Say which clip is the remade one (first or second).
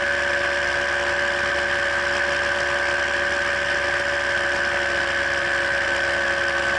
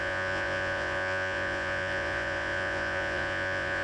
second